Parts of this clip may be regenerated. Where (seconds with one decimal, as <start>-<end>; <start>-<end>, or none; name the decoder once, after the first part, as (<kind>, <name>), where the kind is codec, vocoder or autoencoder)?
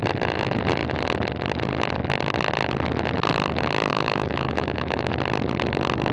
3.9-5.1 (autoencoder, DAC-VAE)